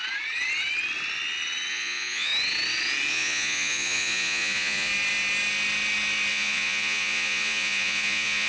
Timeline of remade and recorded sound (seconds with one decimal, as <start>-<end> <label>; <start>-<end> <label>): 0.0-1.7 recorded; 1.7-2.3 remade; 2.3-3.1 recorded; 3.1-4.9 remade; 4.9-6.3 recorded; 6.3-8.5 remade